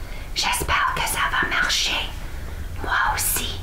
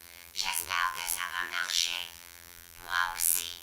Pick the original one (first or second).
first